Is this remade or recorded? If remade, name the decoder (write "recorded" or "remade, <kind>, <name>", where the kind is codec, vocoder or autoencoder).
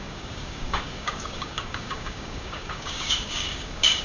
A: remade, codec, DAC